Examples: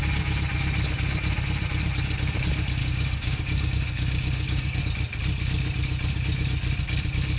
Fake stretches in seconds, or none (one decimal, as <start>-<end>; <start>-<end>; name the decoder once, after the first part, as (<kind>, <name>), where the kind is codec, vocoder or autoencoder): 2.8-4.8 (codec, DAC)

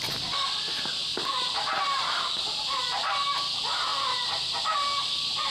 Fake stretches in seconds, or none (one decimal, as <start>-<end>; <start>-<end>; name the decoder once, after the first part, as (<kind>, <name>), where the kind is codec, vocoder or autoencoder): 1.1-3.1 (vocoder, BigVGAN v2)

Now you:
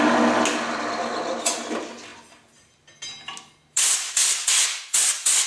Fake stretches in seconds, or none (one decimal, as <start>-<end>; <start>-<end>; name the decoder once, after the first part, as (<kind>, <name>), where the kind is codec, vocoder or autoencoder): none

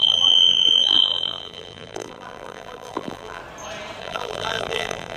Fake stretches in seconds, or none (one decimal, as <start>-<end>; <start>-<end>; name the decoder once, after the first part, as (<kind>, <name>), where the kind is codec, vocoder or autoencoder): 0.0-3.4 (vocoder, BigVGAN v2); 4.0-5.2

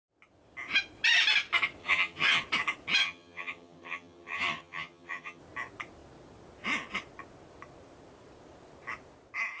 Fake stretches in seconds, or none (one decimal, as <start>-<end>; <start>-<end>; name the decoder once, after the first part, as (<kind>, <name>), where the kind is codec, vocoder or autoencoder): 1.8-2.4 (vocoder, HiFi-GAN); 3.0-5.4

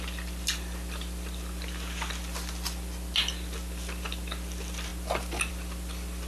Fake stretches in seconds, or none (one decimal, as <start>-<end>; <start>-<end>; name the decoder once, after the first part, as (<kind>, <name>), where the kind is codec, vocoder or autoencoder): none

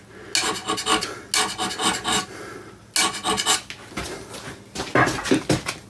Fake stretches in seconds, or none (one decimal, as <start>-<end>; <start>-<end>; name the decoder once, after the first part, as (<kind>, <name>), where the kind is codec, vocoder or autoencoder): none